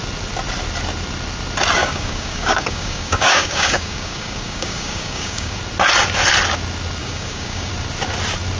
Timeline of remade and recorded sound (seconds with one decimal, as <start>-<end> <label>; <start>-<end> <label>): 0.0-1.8 recorded; 1.8-5.6 remade; 5.6-7.0 recorded; 7.0-7.7 remade; 7.7-8.6 recorded